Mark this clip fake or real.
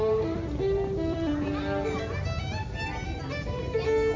fake